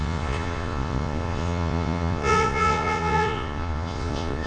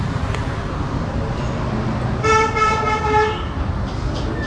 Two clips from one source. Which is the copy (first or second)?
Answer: first